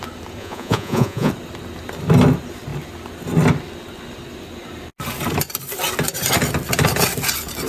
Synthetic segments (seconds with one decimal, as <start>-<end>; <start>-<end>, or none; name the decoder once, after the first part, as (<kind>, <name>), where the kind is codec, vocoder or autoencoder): 0.4-1.3 (vocoder, Vocos)